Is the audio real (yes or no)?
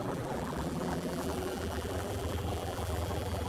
no